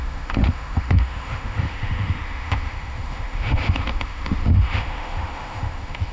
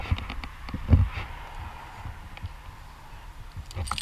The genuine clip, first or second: second